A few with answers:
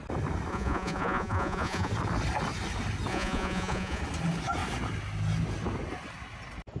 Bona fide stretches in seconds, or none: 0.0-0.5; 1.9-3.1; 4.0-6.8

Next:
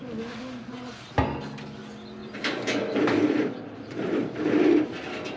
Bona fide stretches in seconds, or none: 0.0-2.2

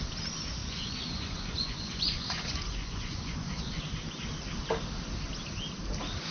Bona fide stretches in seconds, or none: 0.0-0.6; 3.8-6.3

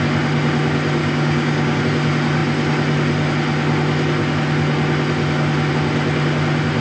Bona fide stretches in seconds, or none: 0.0-1.0; 1.8-6.8

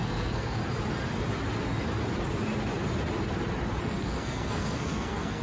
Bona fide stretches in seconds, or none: 0.6-3.8

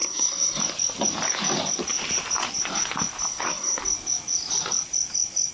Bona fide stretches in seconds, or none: 0.6-3.3; 3.8-5.5